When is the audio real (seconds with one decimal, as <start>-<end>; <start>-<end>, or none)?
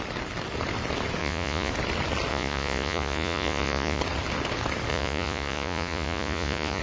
0.0-1.2; 1.7-2.3; 4.0-4.9